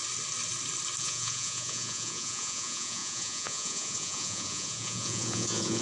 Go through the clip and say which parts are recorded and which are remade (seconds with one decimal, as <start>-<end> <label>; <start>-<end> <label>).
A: 0.0-1.0 recorded; 1.0-5.8 remade